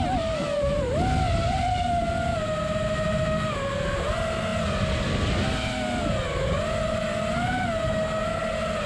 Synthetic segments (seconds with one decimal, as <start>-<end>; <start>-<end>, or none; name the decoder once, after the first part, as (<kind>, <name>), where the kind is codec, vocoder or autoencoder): none

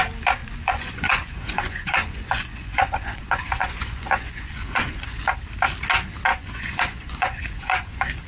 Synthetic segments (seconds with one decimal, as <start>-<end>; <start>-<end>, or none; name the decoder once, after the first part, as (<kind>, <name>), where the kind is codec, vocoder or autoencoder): 0.4-5.2 (vocoder, Vocos); 6.3-8.3

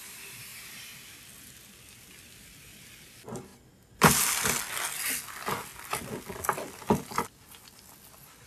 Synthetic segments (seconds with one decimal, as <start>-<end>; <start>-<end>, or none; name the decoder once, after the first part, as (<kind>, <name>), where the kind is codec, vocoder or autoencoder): none